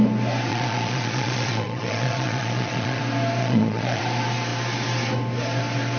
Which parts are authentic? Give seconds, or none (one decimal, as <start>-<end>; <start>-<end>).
0.0-0.5; 3.0-3.4; 4.0-6.0